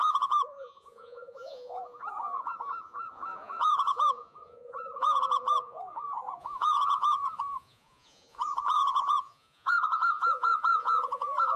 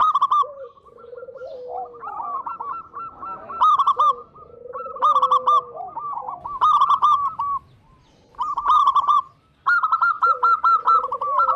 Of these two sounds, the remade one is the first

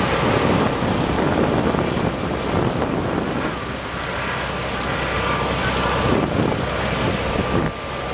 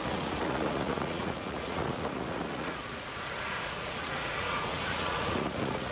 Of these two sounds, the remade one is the second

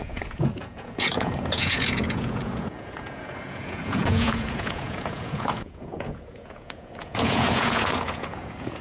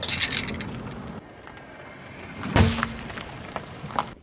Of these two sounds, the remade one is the first